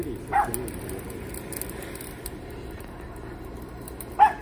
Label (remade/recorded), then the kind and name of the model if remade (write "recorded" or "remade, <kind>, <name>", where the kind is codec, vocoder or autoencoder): recorded